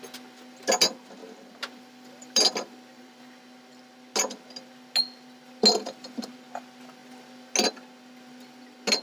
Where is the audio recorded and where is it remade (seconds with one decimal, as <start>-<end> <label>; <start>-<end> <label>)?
0.0-1.2 recorded; 1.2-3.2 remade; 3.2-9.0 recorded